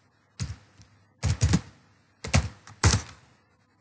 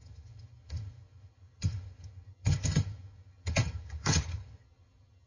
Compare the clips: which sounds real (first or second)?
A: first